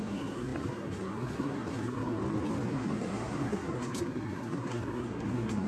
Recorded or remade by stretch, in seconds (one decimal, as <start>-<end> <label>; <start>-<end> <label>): 0.0-2.2 remade; 2.2-2.7 recorded; 2.7-5.7 remade